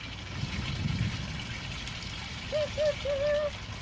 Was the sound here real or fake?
real